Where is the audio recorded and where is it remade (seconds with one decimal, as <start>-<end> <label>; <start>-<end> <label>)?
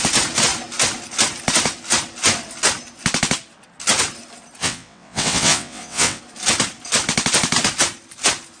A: 0.0-4.6 recorded; 4.6-6.2 remade; 6.2-8.6 recorded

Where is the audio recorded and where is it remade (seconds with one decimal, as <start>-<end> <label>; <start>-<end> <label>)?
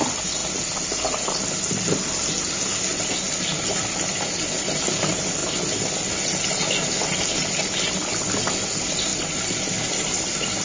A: 0.0-10.6 recorded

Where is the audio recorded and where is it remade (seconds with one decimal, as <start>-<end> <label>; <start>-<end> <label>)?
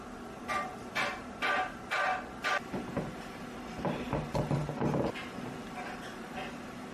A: 0.0-0.7 recorded; 0.7-4.7 remade; 4.7-6.9 recorded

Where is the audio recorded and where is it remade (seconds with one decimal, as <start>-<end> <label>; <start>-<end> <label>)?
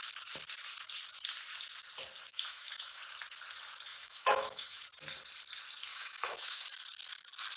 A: 0.0-2.3 recorded; 2.3-3.0 remade; 3.0-3.9 recorded; 3.9-4.8 remade; 4.8-5.9 recorded; 5.9-6.6 remade; 6.6-7.6 recorded